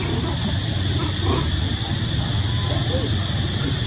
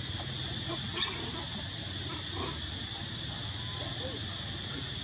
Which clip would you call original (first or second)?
second